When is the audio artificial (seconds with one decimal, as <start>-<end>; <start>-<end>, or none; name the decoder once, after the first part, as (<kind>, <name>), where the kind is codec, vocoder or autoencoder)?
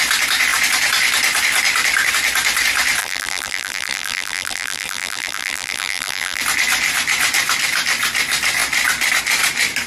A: 3.0-6.4 (vocoder, BigVGAN v2)